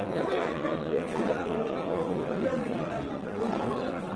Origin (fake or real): fake